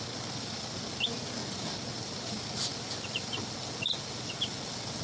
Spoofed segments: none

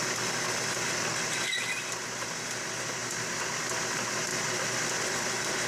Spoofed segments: none

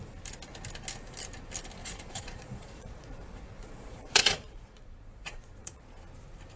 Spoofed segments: 1.8-5.8 (vocoder, Vocos)

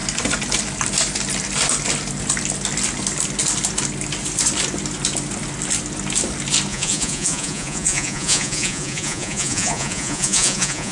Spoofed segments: 6.7-10.9 (vocoder, Vocos)

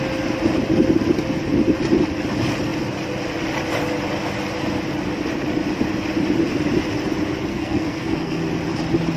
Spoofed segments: 7.5-8.4 (codec, SNAC)

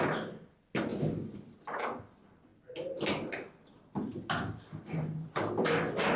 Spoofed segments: none